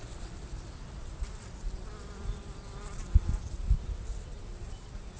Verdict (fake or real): real